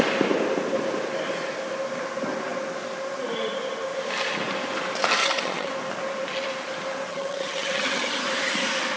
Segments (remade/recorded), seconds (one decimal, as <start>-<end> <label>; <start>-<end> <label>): 0.0-5.2 recorded; 5.2-5.7 remade; 5.7-7.1 recorded; 7.1-8.2 remade; 8.2-9.0 recorded